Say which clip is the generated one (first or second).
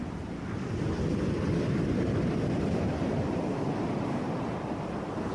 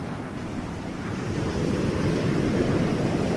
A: second